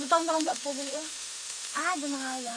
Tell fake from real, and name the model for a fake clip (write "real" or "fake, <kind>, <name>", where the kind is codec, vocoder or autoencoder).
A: fake, autoencoder, DAC-VAE